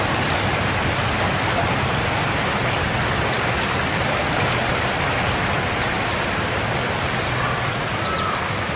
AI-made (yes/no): no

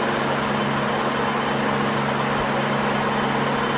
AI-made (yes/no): no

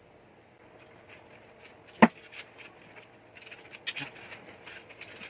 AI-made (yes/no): no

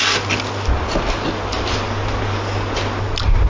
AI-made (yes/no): no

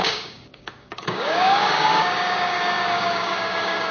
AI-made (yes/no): yes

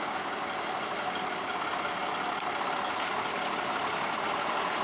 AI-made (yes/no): no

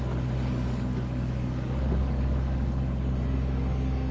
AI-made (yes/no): yes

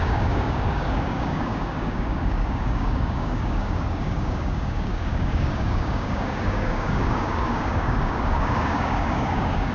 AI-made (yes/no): yes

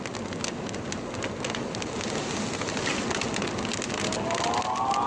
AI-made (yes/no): no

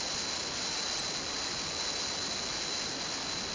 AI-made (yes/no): no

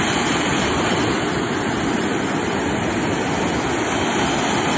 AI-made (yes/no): no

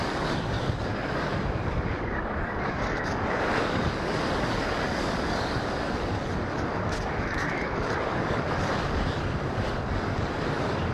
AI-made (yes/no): yes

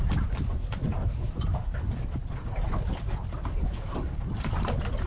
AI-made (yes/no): no